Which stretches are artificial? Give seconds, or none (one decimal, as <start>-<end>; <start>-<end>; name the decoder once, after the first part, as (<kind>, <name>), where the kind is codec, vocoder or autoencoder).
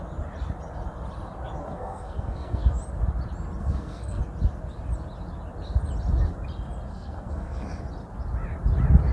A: 1.6-2.8 (codec, SNAC); 3.6-4.2; 6.9-7.8